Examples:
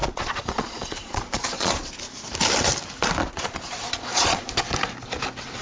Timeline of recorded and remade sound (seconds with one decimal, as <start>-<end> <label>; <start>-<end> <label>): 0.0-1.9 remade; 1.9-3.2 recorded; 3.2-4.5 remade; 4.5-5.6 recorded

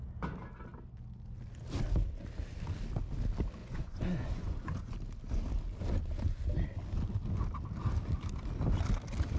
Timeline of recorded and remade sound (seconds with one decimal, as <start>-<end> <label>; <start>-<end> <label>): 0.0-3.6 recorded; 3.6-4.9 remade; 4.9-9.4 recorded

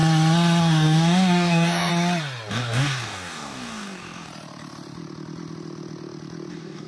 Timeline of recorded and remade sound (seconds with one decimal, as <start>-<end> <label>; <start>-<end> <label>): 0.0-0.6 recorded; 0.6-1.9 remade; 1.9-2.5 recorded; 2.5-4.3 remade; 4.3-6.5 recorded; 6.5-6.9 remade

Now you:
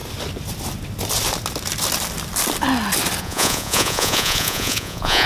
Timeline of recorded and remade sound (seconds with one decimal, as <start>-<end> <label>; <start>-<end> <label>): 0.0-3.2 recorded; 3.2-5.3 remade